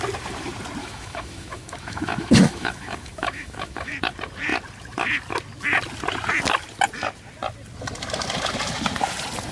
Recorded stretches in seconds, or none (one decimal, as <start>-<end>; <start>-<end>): 0.0-0.8; 3.9-9.5